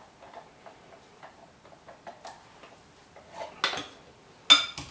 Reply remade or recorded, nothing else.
recorded